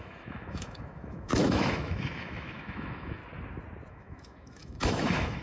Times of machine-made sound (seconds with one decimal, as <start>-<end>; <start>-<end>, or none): 0.0-3.2; 3.9-5.4